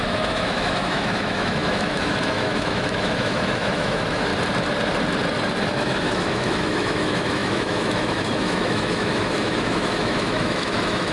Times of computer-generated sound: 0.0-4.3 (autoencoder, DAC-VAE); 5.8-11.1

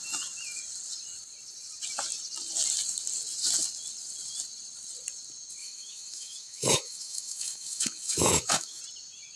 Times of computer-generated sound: 5.6-8.8 (autoencoder, DAC-VAE)